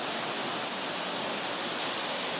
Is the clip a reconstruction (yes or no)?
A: no